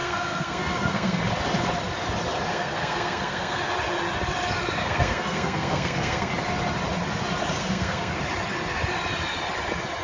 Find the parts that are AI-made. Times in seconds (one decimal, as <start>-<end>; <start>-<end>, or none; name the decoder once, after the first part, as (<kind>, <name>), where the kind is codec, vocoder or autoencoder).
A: 0.0-1.2 (codec, SNAC); 2.5-3.6; 4.8-6.3; 7.6-8.2